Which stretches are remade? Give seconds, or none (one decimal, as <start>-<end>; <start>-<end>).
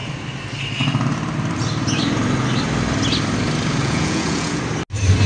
3.8-4.6